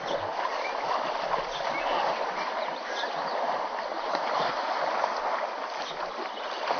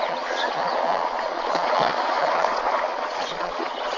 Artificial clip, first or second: second